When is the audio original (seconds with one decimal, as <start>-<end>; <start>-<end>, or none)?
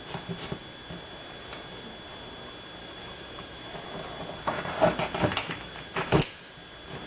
0.0-2.8; 3.9-5.4; 6.5-7.1